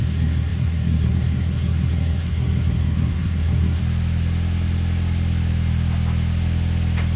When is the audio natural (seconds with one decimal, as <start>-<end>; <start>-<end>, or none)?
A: 3.8-7.2

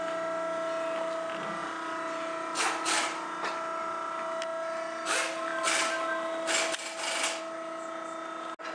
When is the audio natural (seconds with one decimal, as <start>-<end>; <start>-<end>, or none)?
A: 0.0-8.7

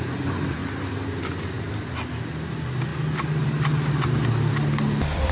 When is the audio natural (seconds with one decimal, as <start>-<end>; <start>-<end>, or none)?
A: 0.0-5.3

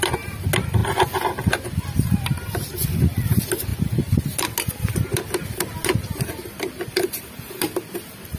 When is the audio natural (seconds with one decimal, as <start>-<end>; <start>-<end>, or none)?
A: 0.0-8.4

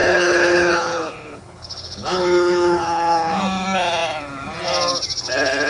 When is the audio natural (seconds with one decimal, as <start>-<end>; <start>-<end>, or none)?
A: 3.4-5.7

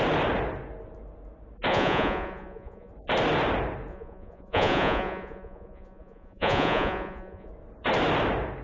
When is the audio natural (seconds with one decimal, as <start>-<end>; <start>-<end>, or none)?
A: 0.0-1.7; 2.9-3.9; 7.5-8.6